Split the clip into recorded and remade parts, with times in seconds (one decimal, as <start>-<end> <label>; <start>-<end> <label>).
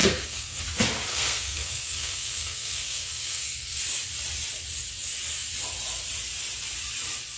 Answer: 0.0-0.6 remade; 0.6-1.1 recorded; 1.1-3.8 remade; 3.8-7.4 recorded